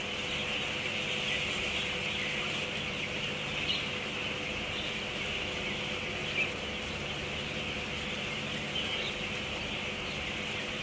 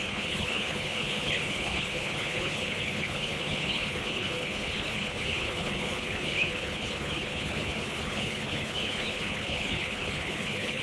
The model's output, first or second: second